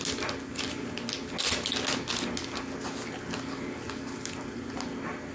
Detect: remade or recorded recorded